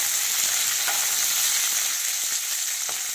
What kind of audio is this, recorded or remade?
recorded